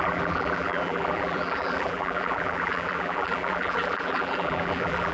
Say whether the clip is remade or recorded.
remade